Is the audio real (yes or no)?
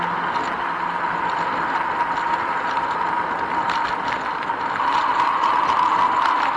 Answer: yes